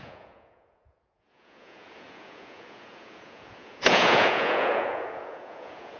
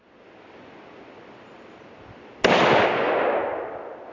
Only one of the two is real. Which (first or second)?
second